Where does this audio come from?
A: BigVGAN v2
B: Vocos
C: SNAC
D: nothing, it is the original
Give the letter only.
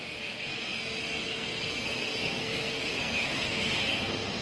C